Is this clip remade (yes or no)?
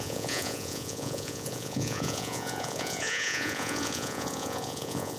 yes